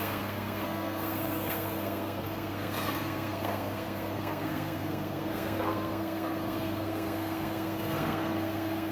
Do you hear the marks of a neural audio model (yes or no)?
yes